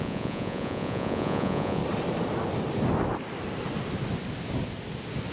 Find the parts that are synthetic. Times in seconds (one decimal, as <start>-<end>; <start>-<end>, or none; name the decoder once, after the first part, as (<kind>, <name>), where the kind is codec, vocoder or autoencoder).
0.0-1.8 (vocoder, Vocos)